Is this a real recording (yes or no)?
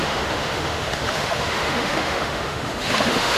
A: no